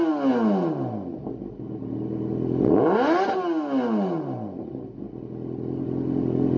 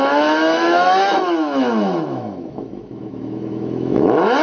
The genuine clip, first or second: first